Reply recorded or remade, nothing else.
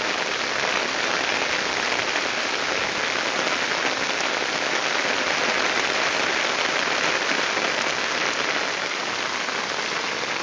recorded